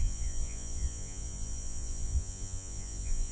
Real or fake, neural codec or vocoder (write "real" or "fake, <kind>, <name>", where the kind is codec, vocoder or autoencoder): fake, vocoder, Vocos